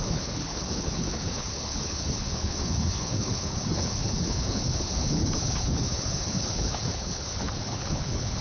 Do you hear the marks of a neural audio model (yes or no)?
yes